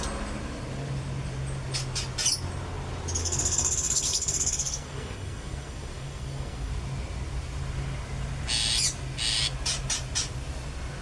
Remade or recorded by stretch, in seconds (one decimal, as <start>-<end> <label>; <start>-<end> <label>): 0.0-3.2 recorded; 3.2-6.7 remade; 6.7-11.0 recorded